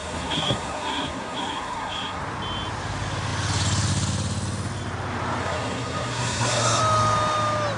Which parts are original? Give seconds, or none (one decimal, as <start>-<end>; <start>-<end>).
2.2-5.4; 6.8-7.8